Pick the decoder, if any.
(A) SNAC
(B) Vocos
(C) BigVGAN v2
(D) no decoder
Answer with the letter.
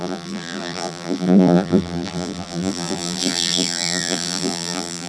C